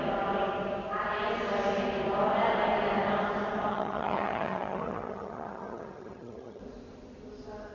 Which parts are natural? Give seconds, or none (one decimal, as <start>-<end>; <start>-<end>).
0.0-3.7; 6.6-7.7